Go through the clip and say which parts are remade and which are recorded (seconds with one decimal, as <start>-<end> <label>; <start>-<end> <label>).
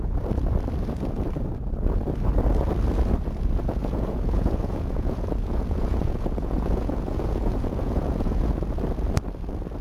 0.0-3.8 recorded; 3.8-8.5 remade; 8.5-9.8 recorded